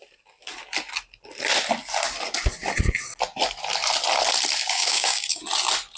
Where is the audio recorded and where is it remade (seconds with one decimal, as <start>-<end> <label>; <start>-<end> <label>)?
0.0-4.6 recorded; 4.6-5.4 remade; 5.4-6.0 recorded